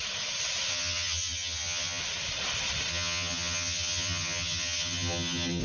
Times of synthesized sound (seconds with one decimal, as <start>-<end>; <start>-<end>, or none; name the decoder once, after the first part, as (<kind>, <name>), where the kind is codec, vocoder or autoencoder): 0.7-2.0 (vocoder, HiFi-GAN); 2.9-5.6

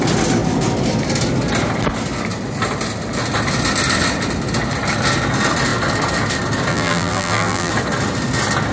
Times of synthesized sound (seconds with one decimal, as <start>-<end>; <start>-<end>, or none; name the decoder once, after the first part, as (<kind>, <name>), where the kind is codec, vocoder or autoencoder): 6.7-7.7 (vocoder, BigVGAN v2)

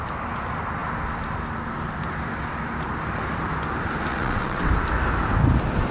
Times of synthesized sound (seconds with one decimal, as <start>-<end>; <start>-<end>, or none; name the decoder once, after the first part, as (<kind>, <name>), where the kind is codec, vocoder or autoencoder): 4.1-4.7 (vocoder, WaveNeXt)

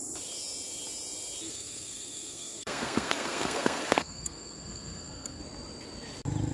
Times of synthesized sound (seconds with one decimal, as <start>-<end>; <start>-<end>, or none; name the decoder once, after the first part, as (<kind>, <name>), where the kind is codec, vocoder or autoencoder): 1.5-5.4 (codec, SNAC)